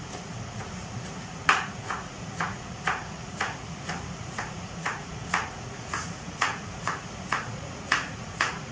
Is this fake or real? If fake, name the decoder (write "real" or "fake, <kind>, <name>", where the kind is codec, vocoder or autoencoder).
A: fake, vocoder, Vocos